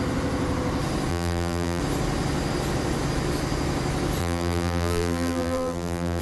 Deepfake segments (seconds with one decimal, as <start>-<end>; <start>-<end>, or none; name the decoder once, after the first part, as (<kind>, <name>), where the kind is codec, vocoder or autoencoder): 1.1-1.8 (vocoder, BigVGAN v2); 4.2-6.2